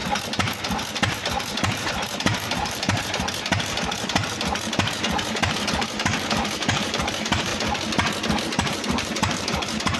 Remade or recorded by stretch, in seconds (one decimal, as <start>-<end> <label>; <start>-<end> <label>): 0.0-1.1 recorded; 1.1-7.5 remade; 7.5-8.4 recorded; 8.4-10.0 remade